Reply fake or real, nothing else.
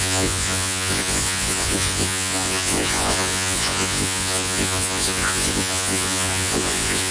fake